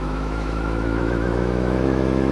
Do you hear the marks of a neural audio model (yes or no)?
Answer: yes